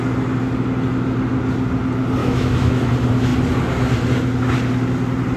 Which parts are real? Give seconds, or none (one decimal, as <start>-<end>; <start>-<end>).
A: 0.0-2.2; 2.9-5.4